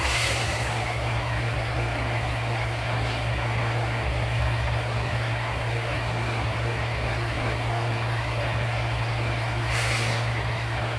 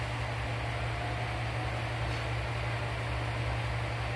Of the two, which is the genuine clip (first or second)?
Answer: second